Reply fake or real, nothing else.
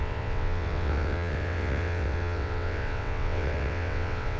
fake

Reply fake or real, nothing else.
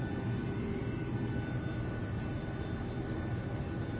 real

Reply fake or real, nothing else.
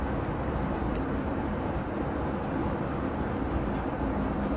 real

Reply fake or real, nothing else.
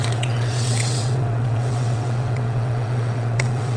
fake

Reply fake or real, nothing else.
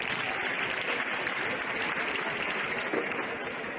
real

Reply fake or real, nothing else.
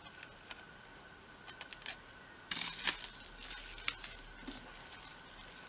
real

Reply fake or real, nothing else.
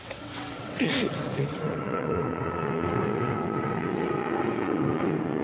fake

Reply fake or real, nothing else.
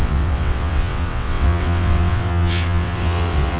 fake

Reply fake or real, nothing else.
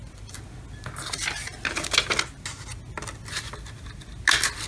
real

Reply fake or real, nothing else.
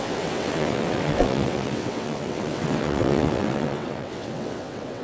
fake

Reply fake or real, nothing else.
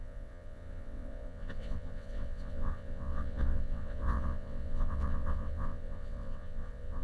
fake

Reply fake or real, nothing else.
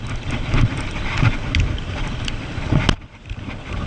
real